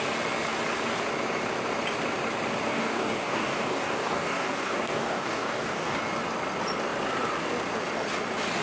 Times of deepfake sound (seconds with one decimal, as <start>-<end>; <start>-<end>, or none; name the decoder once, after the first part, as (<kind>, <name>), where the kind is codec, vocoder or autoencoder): 2.7-6.0 (codec, DAC)